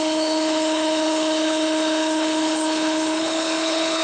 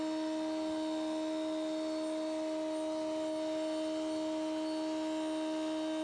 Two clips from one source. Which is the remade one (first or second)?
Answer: first